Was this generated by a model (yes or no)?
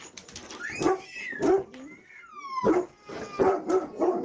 no